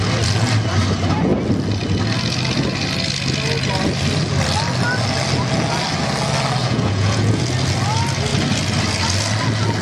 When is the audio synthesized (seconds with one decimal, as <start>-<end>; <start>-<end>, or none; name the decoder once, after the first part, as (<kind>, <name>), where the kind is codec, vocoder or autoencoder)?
6.6-7.4 (vocoder, Vocos)